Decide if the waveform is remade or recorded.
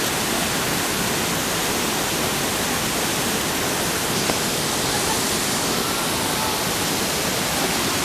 recorded